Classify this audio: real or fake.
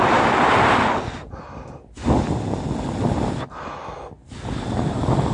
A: real